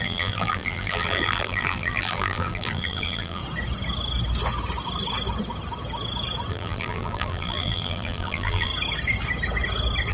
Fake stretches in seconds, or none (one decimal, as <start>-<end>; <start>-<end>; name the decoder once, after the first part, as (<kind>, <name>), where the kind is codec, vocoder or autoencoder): 0.0-3.4 (vocoder, BigVGAN v2); 6.5-8.7